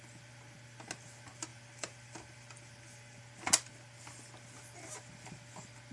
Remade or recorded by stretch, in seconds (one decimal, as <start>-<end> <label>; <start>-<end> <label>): 0.0-1.5 recorded; 1.5-3.2 remade; 3.2-5.9 recorded